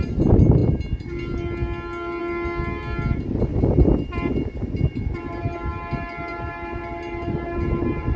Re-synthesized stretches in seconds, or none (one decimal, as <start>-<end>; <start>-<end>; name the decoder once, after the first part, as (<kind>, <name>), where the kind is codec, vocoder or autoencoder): none